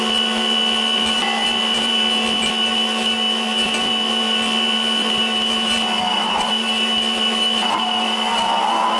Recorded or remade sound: remade